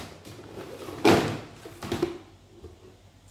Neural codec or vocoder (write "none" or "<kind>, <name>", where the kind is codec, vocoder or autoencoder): none